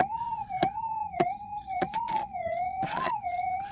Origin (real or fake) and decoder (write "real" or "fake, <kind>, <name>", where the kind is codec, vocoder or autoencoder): fake, vocoder, Vocos